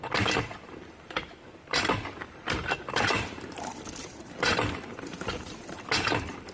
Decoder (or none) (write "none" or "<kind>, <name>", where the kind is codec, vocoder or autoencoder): vocoder, BigVGAN v2